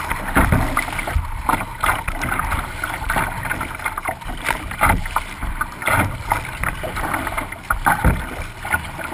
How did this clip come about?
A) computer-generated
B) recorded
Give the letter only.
B